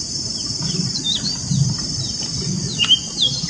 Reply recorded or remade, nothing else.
recorded